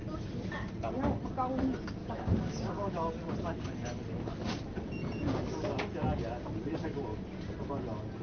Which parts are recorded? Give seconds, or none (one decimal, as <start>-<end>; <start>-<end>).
0.0-2.0; 2.7-8.2